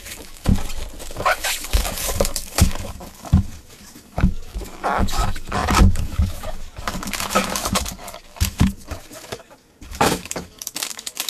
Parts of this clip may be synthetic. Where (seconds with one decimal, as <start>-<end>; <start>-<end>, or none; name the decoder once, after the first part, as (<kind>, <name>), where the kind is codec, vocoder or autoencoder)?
0.0-0.5 (codec, DAC); 1.0-11.3